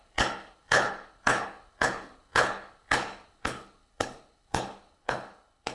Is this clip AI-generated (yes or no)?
yes